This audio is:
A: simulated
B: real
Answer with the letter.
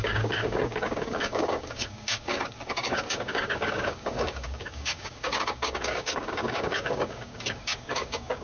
A